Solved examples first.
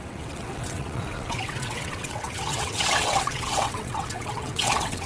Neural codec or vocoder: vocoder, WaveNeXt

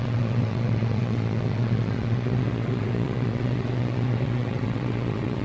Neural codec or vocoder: vocoder, WaveNeXt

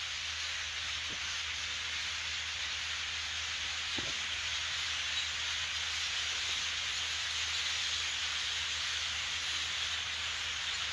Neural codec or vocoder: none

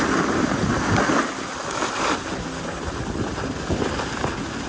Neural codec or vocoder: none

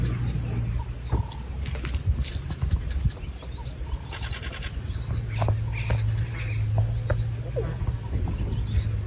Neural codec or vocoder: none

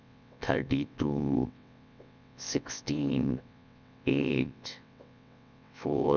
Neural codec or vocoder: vocoder, WaveNeXt